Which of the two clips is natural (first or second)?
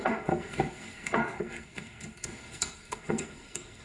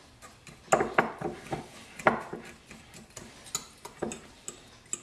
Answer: second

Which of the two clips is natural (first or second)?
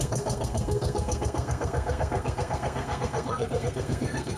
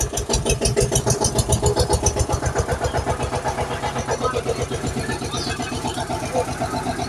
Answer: second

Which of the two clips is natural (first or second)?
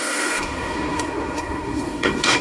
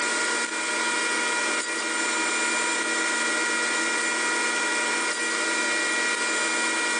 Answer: second